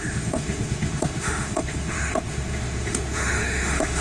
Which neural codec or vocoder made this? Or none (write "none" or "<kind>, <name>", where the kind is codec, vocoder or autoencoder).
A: autoencoder, DAC-VAE